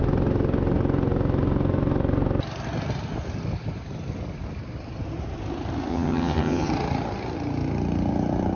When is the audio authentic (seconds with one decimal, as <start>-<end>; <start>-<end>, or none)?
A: 0.0-5.9; 6.7-8.6